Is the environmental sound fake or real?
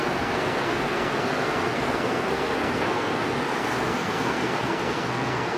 fake